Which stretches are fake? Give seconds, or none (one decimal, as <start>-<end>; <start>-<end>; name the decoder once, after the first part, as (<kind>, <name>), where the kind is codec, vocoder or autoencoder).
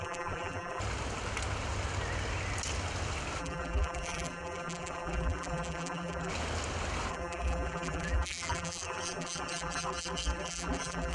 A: 0.0-0.8 (vocoder, BigVGAN v2); 3.4-6.3; 7.1-11.1